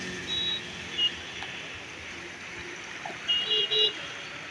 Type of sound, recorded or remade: recorded